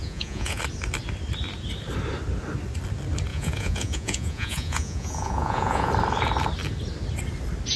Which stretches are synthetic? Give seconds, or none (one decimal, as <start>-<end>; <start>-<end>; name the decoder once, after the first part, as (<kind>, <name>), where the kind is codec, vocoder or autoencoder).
0.0-0.6 (vocoder, Vocos); 3.3-5.9